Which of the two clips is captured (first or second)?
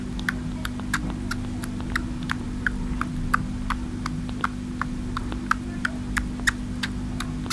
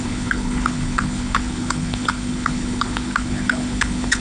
first